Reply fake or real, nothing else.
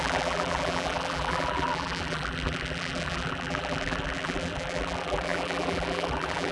fake